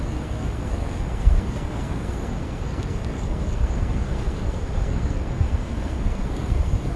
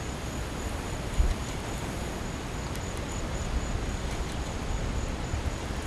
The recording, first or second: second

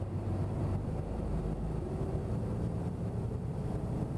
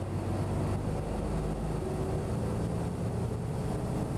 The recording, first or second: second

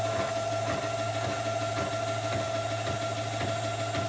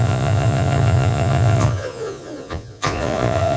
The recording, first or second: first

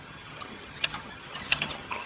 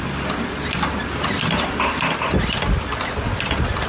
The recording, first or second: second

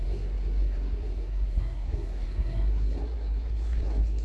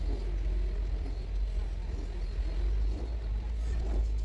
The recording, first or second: second